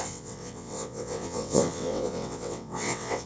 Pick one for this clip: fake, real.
fake